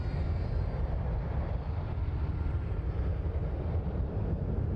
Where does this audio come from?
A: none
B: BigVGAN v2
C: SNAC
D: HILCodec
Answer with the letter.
A